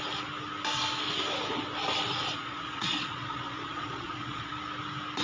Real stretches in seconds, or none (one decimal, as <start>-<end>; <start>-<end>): 0.0-2.2; 4.5-5.2